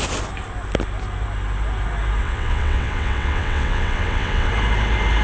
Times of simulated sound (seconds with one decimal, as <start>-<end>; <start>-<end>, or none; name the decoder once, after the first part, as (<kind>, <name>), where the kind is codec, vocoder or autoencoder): 2.2-4.5 (vocoder, WaveNeXt)